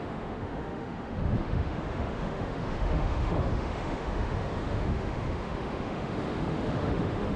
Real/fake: fake